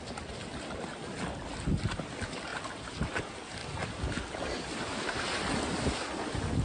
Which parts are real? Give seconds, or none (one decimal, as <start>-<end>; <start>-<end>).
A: 0.0-6.6